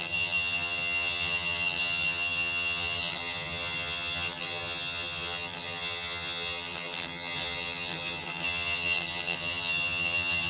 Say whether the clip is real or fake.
fake